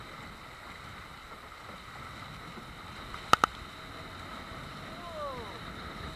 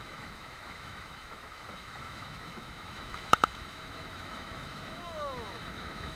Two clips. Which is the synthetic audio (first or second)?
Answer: second